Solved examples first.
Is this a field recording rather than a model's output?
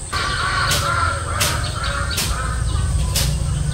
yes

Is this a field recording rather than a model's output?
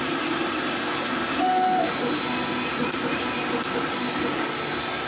yes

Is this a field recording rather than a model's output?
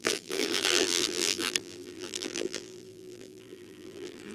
no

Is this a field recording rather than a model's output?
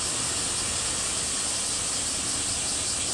yes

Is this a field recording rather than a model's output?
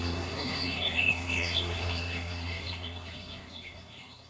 no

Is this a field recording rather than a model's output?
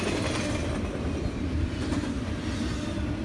yes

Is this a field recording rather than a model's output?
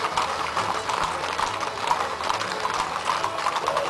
yes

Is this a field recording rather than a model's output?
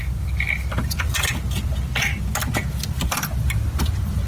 yes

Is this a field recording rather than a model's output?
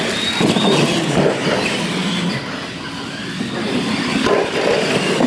yes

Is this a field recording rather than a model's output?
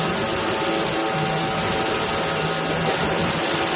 yes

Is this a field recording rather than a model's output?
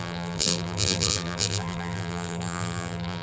no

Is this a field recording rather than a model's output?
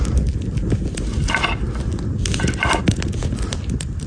yes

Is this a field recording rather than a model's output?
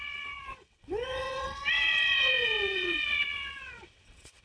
no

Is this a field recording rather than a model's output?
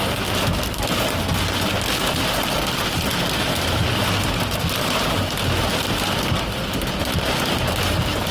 yes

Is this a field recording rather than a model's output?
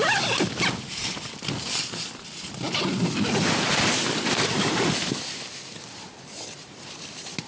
no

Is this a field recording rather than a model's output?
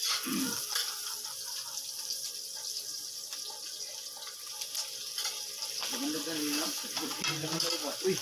yes